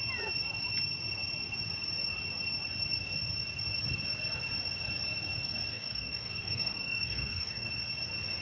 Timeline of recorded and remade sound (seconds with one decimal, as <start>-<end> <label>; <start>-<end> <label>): 0.0-5.7 recorded; 5.7-7.7 remade; 7.7-8.4 recorded